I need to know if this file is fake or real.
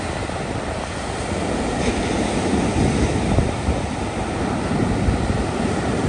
real